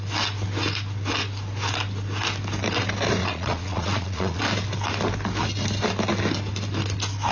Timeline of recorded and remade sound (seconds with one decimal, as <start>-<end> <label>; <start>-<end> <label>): 0.0-3.2 recorded; 3.2-4.4 remade; 4.4-7.3 recorded